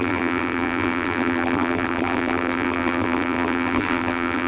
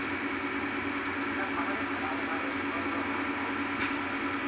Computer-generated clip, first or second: first